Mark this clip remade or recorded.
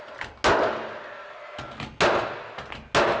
recorded